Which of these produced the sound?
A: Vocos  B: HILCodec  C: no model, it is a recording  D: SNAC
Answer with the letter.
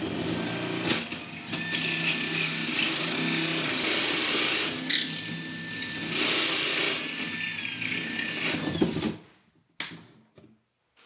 C